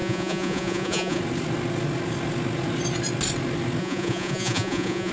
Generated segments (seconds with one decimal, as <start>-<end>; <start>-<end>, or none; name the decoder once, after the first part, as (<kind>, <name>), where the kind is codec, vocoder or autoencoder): 0.0-1.2 (vocoder, Vocos); 3.8-5.1